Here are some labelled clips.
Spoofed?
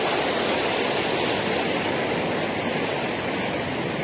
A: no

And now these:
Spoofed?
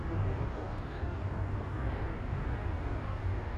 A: yes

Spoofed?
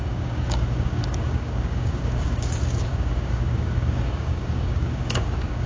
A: yes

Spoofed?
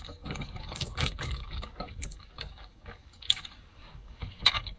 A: yes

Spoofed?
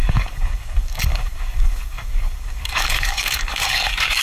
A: yes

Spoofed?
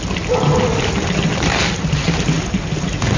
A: no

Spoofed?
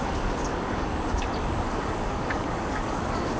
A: yes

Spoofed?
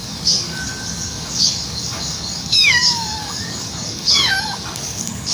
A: yes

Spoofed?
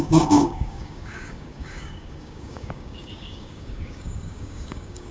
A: yes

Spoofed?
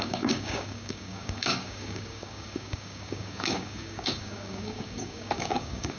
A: yes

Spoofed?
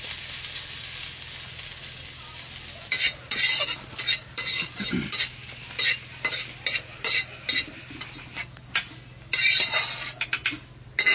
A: no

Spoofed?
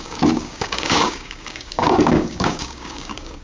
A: yes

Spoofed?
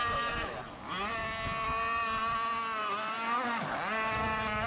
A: no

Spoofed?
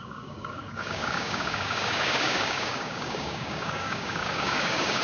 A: yes